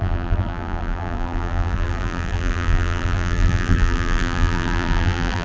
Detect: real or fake fake